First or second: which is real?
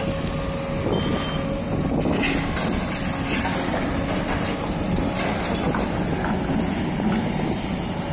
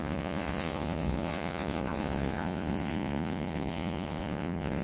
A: first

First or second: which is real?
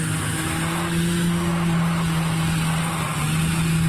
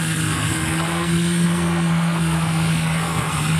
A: first